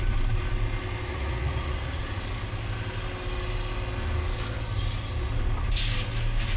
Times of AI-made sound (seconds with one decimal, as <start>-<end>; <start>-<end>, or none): 1.1-2.0